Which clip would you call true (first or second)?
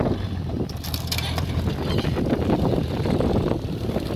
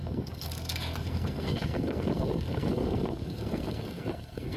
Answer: first